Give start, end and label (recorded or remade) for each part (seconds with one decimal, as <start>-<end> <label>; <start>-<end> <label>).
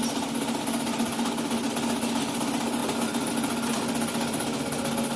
0.0-5.2 recorded